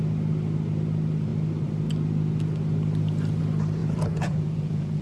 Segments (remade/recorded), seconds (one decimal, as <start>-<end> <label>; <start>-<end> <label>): 0.0-3.8 recorded; 3.8-5.0 remade